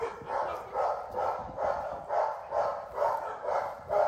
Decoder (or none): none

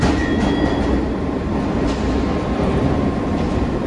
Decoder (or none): none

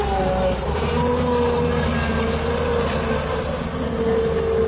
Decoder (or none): none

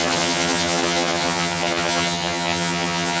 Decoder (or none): vocoder, HiFi-GAN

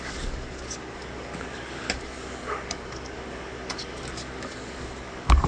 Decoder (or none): codec, DAC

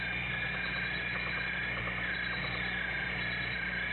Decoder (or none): none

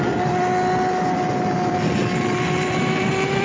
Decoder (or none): none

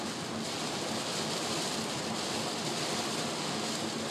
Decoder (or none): none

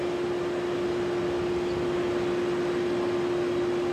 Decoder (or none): none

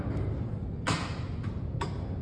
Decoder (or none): none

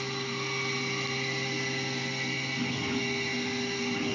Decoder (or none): none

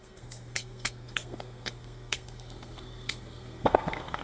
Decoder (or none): codec, SNAC